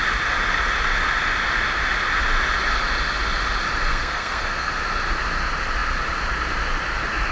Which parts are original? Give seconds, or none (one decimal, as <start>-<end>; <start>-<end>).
0.0-3.9; 4.7-7.3